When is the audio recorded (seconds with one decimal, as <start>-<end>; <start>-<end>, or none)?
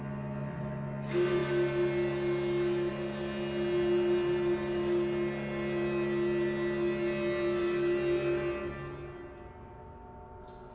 0.0-10.7